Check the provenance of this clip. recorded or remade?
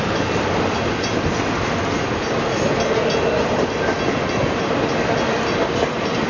recorded